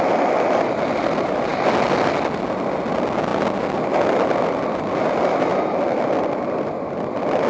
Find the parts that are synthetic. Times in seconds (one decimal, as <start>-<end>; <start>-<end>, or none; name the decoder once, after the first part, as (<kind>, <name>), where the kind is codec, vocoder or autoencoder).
none